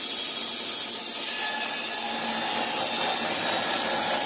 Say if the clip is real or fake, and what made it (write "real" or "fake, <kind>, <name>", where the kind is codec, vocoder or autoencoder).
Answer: real